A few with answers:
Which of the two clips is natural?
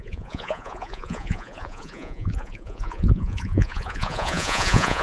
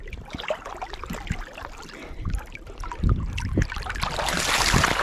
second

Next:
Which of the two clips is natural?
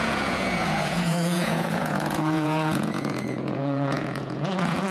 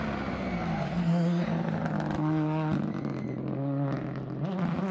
second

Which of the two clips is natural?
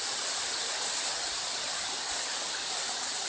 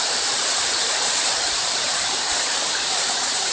first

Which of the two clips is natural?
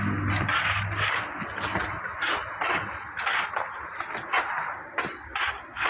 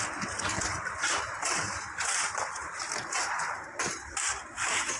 first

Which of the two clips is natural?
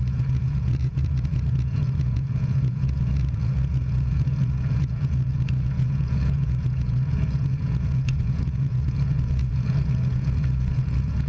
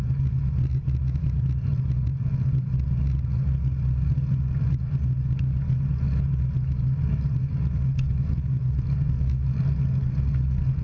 second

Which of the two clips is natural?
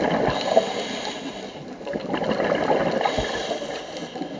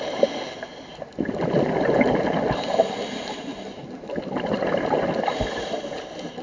first